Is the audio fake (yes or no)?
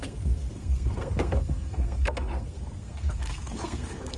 yes